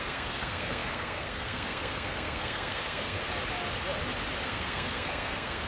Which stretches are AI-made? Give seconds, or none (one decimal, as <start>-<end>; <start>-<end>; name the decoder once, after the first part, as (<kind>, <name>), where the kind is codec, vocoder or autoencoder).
0.0-3.2 (codec, SNAC); 4.4-5.7